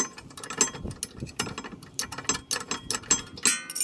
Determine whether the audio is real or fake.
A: real